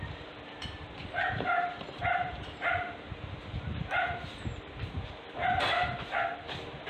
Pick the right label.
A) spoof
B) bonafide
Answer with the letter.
A